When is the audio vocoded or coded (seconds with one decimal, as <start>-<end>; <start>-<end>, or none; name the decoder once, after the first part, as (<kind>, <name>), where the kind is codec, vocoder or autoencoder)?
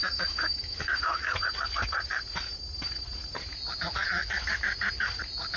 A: 0.0-1.4 (autoencoder, DAC-VAE); 4.2-4.9